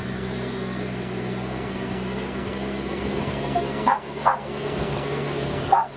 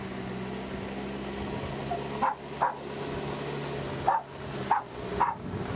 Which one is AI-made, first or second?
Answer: first